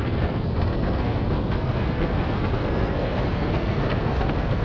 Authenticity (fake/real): fake